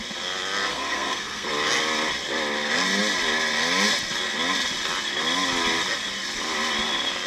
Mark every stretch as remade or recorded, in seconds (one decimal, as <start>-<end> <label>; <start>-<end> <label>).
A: 0.0-0.7 recorded; 0.7-1.5 remade; 1.5-7.3 recorded